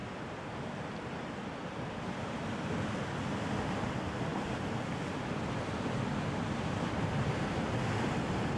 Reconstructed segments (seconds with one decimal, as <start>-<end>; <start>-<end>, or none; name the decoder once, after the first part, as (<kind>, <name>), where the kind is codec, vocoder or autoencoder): 1.6-2.9 (vocoder, BigVGAN v2); 4.3-7.7